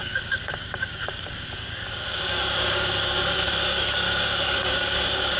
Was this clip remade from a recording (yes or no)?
yes